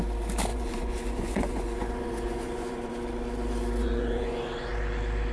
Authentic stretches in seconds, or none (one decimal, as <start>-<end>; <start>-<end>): 0.0-0.5; 2.9-3.8; 4.7-5.3